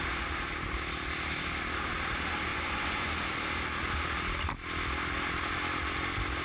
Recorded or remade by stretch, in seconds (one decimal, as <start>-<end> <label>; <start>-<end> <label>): 0.0-2.5 recorded; 2.5-3.1 remade; 3.1-6.4 recorded